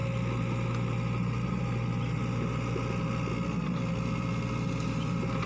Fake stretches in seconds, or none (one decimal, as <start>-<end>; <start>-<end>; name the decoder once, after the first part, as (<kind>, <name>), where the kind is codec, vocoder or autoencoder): none